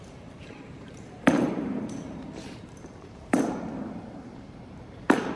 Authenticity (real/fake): fake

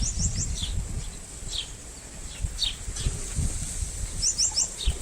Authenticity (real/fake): real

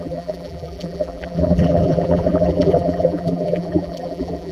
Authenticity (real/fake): fake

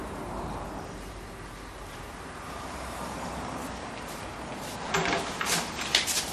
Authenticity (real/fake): fake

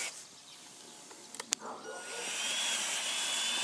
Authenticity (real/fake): real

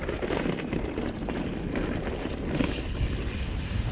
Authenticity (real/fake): real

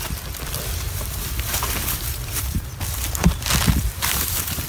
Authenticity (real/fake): fake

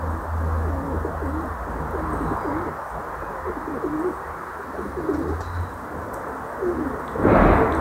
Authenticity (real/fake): real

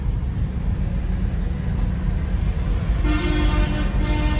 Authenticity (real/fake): real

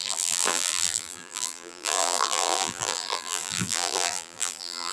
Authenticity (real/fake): fake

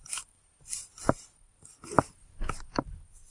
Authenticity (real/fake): real